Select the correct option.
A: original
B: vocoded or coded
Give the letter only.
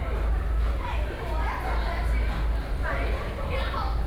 A